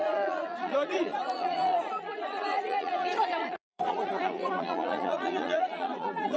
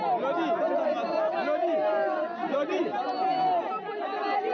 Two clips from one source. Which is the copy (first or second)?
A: first